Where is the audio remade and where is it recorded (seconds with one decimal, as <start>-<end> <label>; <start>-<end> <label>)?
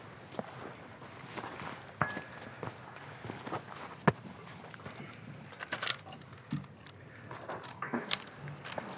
0.0-7.7 recorded; 7.7-8.2 remade; 8.2-9.0 recorded